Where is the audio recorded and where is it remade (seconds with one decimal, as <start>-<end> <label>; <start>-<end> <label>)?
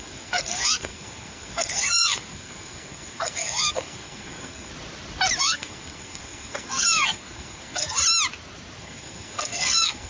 0.0-4.7 remade; 4.7-5.4 recorded; 5.4-8.0 remade; 8.0-8.8 recorded; 8.8-10.1 remade